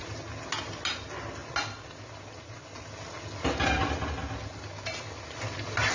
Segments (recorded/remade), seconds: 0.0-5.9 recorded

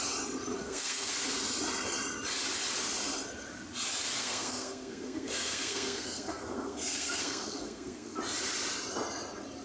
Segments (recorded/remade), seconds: 0.0-0.6 recorded; 0.6-1.1 remade; 1.1-4.2 recorded; 4.2-8.2 remade; 8.2-9.6 recorded

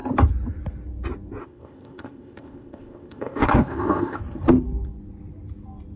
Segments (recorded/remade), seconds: 0.0-1.4 recorded; 1.4-4.2 remade; 4.2-6.0 recorded

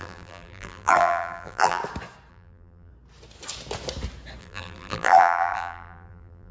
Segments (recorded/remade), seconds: 0.0-1.8 remade; 1.8-2.3 recorded; 2.3-2.9 remade; 2.9-4.4 recorded; 4.4-6.5 remade

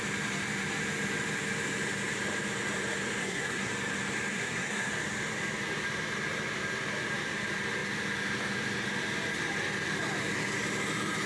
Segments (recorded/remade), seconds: 0.0-3.2 recorded; 3.2-3.7 remade; 3.7-4.3 recorded; 4.3-4.9 remade; 4.9-11.3 recorded

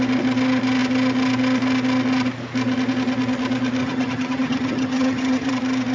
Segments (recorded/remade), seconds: 0.0-3.8 recorded; 3.8-5.5 remade; 5.5-5.9 recorded

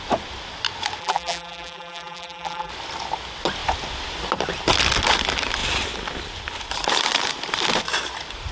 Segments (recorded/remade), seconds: 0.0-1.0 recorded; 1.0-2.7 remade; 2.7-8.5 recorded